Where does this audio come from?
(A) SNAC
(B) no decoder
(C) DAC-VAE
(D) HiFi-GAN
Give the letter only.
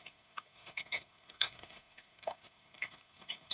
A